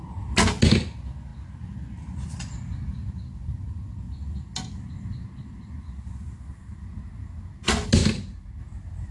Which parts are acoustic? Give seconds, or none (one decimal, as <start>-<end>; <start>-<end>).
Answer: 0.0-8.0; 8.6-9.1